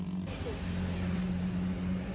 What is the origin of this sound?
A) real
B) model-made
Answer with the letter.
A